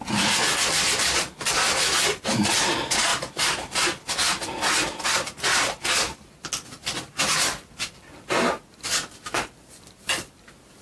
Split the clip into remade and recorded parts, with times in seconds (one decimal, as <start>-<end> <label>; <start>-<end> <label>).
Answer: 0.0-10.8 recorded